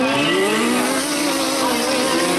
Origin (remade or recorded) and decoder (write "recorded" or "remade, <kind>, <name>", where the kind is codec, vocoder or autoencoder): recorded